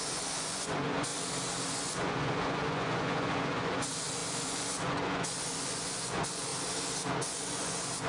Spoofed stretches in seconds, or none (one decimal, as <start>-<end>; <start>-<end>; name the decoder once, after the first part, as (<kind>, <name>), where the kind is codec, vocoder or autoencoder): 0.0-1.1 (vocoder, Vocos); 1.7-6.5; 7.2-8.1